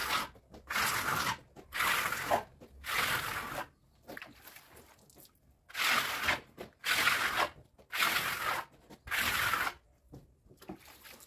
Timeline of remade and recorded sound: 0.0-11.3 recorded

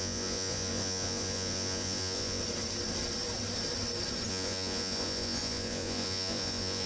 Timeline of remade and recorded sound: 0.0-2.4 remade; 2.4-4.3 recorded; 4.3-6.9 remade

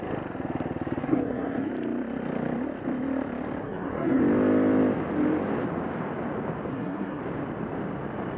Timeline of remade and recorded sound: 0.0-1.0 recorded; 1.0-1.7 remade; 1.7-3.6 recorded; 3.6-4.2 remade; 4.2-6.7 recorded; 6.7-7.2 remade; 7.2-8.4 recorded

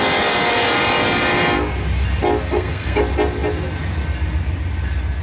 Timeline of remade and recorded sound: 0.0-2.5 recorded; 2.5-3.0 remade; 3.0-5.2 recorded